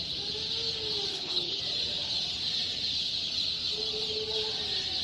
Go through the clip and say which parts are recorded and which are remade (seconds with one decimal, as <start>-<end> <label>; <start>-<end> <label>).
0.0-1.1 recorded; 1.1-1.6 remade; 1.6-5.0 recorded